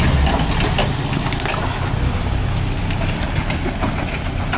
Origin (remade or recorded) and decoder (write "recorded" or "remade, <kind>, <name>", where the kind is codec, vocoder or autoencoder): recorded